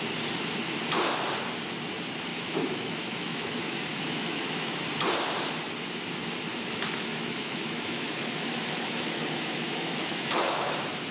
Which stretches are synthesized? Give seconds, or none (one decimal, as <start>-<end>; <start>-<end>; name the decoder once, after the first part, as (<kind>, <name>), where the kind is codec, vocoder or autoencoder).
2.3-4.8 (autoencoder, DAC-VAE); 6.5-10.7